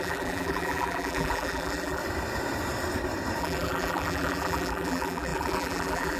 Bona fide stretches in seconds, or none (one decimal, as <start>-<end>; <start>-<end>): 2.0-3.4